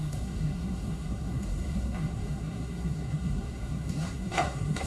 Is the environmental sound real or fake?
fake